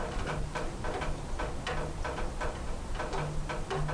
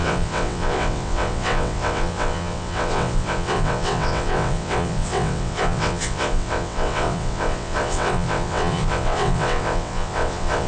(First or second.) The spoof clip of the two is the second